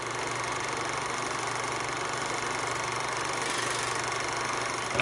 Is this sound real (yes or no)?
yes